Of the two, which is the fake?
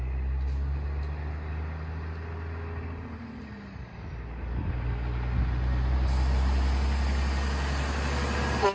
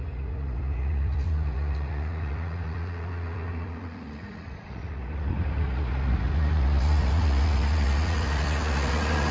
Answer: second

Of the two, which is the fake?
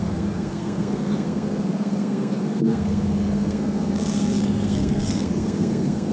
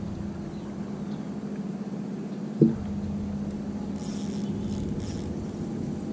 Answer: first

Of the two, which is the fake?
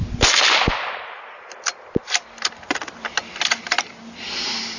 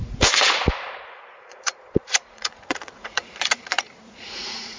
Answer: second